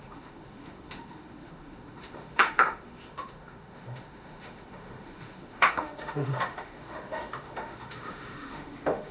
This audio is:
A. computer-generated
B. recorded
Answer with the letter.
A